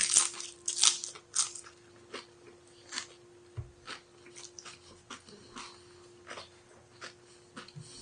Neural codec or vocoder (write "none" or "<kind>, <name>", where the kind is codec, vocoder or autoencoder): none